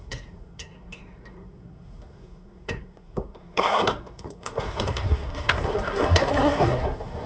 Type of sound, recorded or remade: remade